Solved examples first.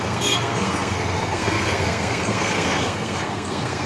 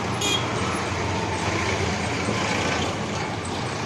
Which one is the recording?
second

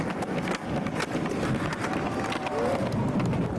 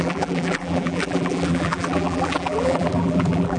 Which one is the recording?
first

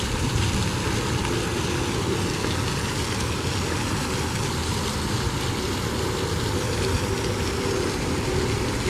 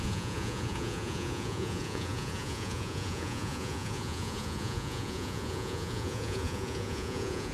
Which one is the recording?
first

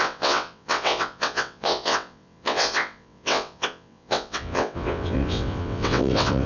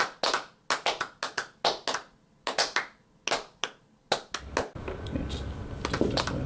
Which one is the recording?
second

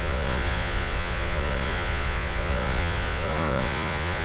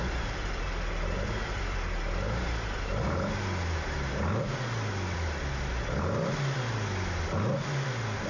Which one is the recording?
second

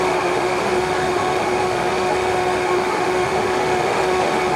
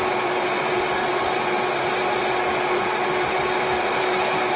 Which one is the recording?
second